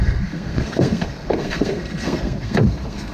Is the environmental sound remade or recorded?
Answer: remade